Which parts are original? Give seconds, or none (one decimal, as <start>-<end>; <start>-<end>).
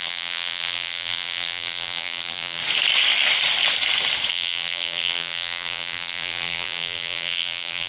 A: 2.6-4.3